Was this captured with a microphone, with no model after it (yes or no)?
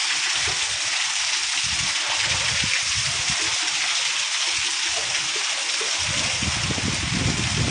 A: yes